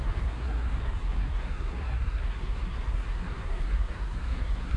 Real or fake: fake